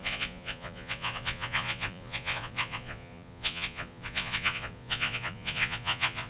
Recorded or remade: remade